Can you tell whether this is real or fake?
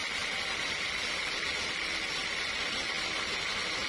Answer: real